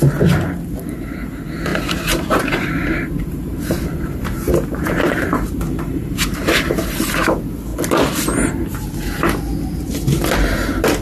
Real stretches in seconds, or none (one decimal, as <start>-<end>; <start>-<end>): 0.0-1.7; 6.7-11.0